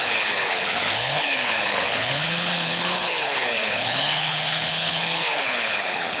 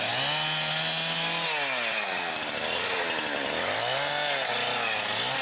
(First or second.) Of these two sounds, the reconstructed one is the first